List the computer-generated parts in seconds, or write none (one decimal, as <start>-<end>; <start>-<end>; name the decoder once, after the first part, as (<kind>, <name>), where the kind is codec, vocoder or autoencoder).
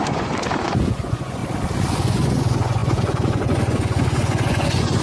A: 0.0-1.4 (vocoder, Vocos); 1.9-5.0